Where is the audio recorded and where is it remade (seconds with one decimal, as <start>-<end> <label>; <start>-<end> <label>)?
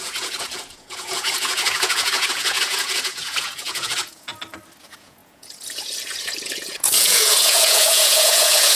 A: 0.0-4.3 remade; 4.3-4.8 recorded; 4.8-8.7 remade